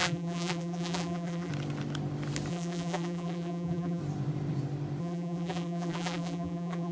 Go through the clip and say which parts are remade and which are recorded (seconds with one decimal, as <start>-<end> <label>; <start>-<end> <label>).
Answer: 0.0-1.5 remade; 1.5-2.5 recorded; 2.5-4.0 remade; 4.0-5.0 recorded; 5.0-6.9 remade